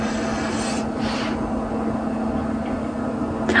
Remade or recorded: recorded